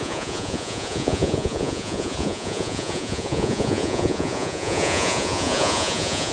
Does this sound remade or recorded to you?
remade